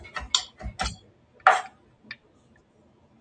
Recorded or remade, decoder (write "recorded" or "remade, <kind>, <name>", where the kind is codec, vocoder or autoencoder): recorded